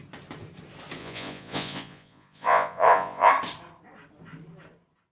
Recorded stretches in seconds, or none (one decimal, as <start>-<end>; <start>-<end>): 0.0-1.0; 3.3-5.1